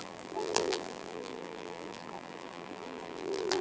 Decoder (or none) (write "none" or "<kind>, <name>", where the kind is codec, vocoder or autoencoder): vocoder, BigVGAN v2